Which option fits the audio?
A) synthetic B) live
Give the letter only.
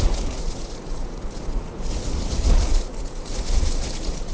A